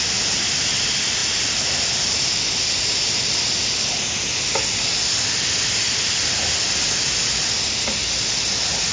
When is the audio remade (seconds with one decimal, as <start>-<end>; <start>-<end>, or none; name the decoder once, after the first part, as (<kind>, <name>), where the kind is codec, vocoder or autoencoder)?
none

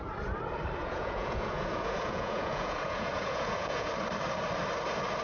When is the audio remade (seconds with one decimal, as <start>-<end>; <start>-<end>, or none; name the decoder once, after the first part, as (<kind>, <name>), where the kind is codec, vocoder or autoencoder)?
0.8-3.9 (vocoder, Vocos)

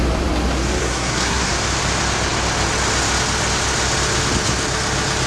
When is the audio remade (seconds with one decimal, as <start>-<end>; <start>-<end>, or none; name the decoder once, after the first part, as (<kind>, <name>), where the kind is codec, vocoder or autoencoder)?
0.8-1.5 (codec, SNAC)

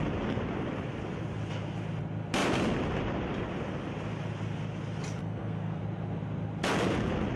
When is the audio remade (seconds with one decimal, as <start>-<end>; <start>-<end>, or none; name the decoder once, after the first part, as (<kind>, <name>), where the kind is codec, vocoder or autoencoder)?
5.2-5.8 (codec, SNAC)

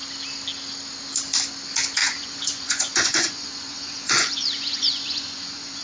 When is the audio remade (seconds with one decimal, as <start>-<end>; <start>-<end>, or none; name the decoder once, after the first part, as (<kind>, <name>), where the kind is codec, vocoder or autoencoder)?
2.0-5.8 (vocoder, Vocos)

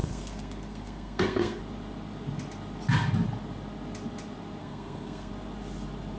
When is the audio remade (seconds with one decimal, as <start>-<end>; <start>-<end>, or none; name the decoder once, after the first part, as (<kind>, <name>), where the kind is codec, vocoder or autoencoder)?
0.0-1.6 (codec, SNAC); 4.6-5.3

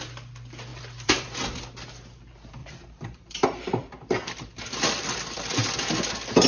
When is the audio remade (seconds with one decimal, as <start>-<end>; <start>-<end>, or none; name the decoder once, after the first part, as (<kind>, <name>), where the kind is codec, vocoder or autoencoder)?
0.7-1.4 (vocoder, BigVGAN v2); 2.6-5.5

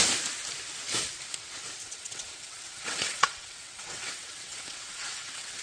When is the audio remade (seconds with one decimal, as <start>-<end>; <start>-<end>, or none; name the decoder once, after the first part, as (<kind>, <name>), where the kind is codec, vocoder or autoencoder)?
1.8-5.6 (vocoder, WaveNeXt)